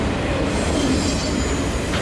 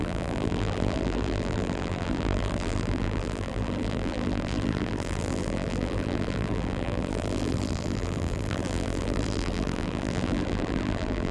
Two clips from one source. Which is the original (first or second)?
first